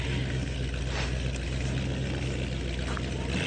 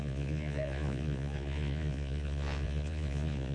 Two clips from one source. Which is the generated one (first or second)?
second